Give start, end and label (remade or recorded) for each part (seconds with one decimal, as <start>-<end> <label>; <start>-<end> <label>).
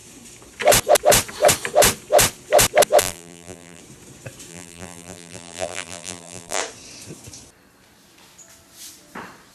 0.0-3.0 recorded; 3.0-3.8 remade; 3.8-4.5 recorded; 4.5-6.6 remade; 6.6-9.5 recorded